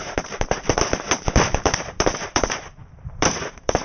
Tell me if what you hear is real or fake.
fake